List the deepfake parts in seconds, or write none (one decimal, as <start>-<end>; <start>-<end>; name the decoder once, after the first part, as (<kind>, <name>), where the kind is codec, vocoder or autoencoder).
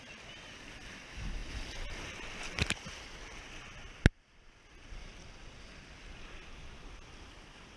none